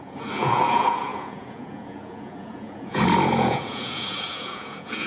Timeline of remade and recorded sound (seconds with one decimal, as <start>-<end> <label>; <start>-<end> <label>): 0.0-5.1 remade